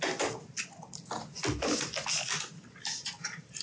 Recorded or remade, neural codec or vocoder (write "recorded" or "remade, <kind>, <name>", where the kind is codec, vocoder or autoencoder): recorded